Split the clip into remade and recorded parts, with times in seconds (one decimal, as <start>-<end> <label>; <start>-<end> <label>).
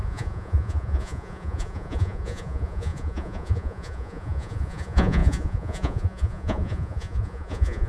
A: 0.0-7.9 remade